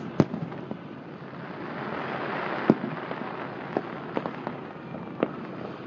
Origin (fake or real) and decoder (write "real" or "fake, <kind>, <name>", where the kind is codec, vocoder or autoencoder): real